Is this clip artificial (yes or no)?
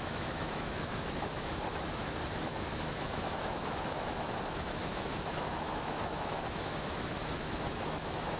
yes